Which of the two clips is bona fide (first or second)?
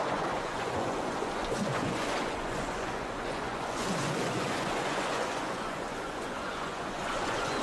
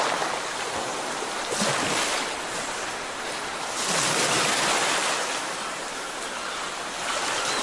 second